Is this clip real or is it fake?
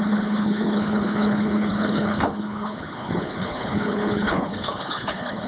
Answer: fake